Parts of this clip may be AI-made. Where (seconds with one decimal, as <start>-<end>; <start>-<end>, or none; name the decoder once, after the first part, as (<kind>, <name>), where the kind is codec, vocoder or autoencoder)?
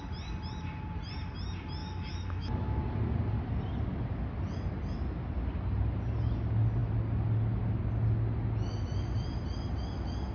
1.8-2.8 (autoencoder, DAC-VAE)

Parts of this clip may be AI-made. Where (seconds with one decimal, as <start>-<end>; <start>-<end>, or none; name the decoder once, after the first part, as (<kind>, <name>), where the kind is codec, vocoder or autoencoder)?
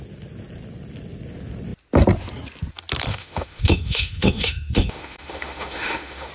3.1-6.3 (autoencoder, DAC-VAE)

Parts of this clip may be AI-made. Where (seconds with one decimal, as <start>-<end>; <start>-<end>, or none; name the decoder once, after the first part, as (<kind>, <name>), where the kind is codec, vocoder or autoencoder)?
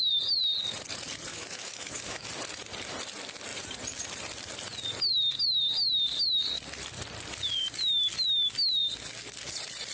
1.3-2.3 (autoencoder, DAC-VAE)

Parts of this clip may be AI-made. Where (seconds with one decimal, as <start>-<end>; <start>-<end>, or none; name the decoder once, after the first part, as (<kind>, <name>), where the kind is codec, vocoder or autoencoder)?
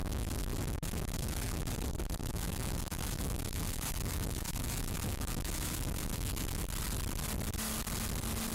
0.0-1.7 (autoencoder, DAC-VAE); 2.2-6.6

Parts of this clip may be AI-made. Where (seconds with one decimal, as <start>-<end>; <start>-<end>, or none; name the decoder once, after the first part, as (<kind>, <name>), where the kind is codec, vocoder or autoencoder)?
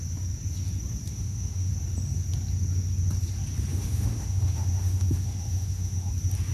1.1-1.7 (autoencoder, DAC-VAE); 3.7-6.1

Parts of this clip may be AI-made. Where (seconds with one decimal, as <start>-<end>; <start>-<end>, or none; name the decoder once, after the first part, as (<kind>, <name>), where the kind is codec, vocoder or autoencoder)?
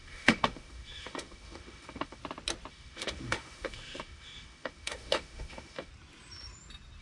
0.0-2.2 (autoencoder, DAC-VAE); 2.7-5.9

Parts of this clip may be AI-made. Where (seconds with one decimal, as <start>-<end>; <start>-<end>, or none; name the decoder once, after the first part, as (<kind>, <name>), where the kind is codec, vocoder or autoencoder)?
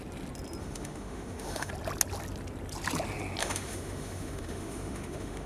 0.6-1.7 (autoencoder, DAC-VAE); 3.4-5.5